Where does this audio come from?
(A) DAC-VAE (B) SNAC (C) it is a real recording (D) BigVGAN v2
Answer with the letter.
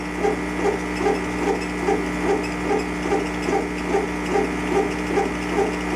C